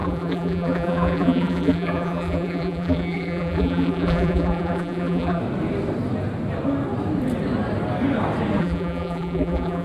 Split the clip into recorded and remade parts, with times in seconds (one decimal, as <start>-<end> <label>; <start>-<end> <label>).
0.0-5.4 remade; 5.4-8.6 recorded; 8.6-9.8 remade